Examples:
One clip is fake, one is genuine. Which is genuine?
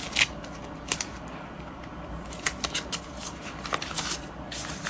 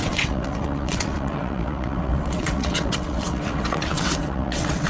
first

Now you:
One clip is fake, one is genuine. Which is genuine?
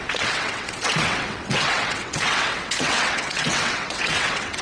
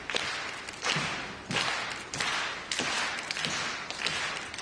second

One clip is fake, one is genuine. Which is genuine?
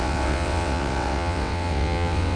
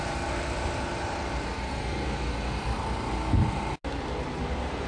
second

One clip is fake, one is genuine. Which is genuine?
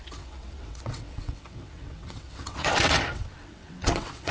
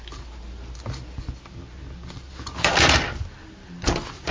second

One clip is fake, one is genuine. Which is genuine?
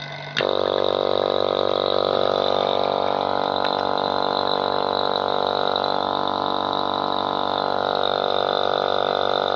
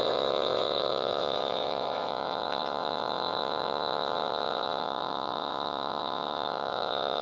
first